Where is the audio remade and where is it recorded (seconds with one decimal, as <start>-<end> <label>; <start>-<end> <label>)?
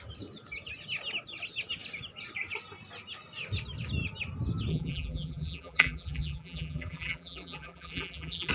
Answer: 0.0-4.7 recorded; 4.7-8.5 remade